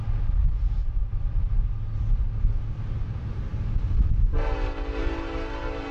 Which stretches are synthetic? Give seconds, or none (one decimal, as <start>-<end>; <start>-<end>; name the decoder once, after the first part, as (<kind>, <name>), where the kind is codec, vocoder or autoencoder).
1.1-1.6 (vocoder, BigVGAN v2)